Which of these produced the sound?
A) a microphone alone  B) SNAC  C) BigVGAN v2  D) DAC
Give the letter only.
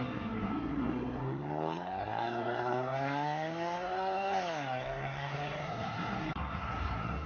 B